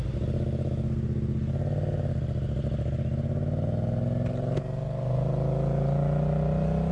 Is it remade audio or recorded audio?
recorded